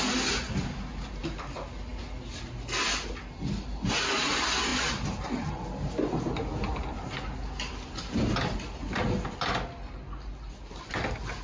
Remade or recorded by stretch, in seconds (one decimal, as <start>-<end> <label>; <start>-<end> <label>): 0.0-11.4 recorded